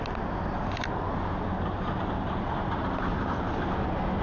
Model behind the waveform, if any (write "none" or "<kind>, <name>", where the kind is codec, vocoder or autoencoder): none